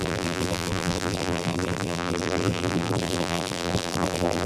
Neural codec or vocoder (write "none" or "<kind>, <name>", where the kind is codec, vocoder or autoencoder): vocoder, BigVGAN v2